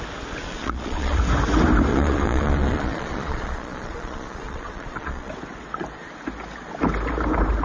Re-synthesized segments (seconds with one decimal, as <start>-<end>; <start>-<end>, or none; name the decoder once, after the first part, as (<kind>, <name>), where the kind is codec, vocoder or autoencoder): 0.4-1.2 (vocoder, Vocos); 1.9-5.3

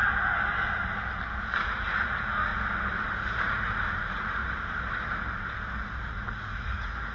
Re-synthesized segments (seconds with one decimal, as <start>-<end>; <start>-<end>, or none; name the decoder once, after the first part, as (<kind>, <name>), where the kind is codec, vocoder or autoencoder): 1.6-2.5 (vocoder, Vocos); 3.3-4.4; 6.1-7.1